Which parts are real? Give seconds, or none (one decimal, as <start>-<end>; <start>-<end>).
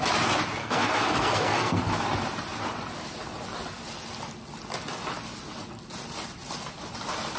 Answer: 0.0-0.6; 1.8-7.4